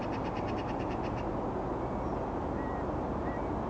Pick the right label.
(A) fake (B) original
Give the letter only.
B